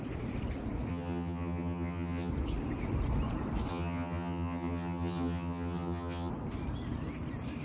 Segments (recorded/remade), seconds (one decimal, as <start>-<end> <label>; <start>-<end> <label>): 0.0-0.9 recorded; 0.9-2.3 remade; 2.3-3.7 recorded; 3.7-6.3 remade; 6.3-7.6 recorded